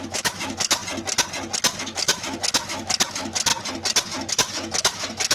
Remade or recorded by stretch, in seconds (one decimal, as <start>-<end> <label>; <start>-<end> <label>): 0.0-0.8 remade; 0.8-1.8 recorded; 1.8-3.5 remade; 3.5-4.3 recorded; 4.3-5.3 remade